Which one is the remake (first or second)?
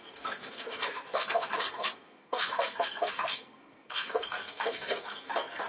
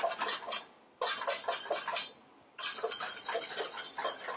first